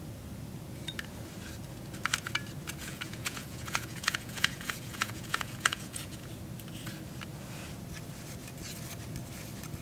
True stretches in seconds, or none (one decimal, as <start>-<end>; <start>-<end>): 0.0-2.8; 6.3-9.8